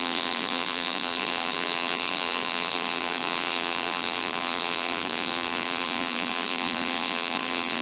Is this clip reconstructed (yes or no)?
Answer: yes